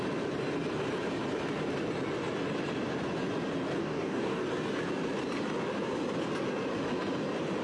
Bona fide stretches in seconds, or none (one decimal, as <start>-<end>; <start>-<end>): 0.0-3.8; 4.4-7.6